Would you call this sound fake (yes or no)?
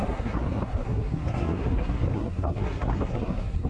yes